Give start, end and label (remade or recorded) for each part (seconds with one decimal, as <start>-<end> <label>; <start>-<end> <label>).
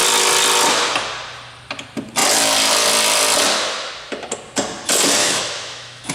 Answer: 0.0-5.2 recorded; 5.2-6.1 remade